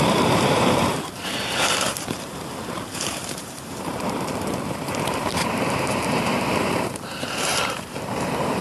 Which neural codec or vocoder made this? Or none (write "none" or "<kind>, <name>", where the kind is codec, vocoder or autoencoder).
vocoder, BigVGAN v2